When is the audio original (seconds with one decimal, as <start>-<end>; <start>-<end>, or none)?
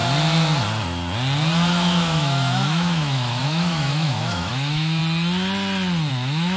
0.0-1.7; 5.0-6.1